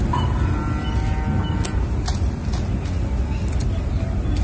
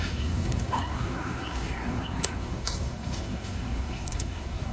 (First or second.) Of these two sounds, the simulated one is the second